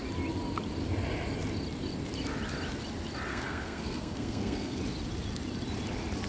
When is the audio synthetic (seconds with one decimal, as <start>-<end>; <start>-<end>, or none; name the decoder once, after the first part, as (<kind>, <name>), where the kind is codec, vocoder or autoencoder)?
3.3-4.8 (codec, SNAC)

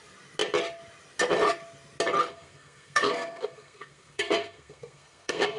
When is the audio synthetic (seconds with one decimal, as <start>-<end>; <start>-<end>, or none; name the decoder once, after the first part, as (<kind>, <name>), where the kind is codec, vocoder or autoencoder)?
2.3-5.6 (codec, SNAC)

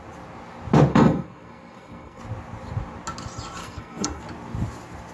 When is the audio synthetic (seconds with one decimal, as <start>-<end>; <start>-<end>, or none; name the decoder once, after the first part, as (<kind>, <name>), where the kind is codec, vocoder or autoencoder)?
0.9-2.2 (codec, SNAC); 3.6-4.2

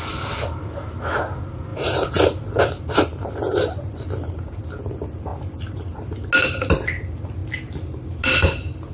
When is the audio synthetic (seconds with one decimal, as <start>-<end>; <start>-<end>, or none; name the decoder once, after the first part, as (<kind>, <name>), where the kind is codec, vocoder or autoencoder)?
none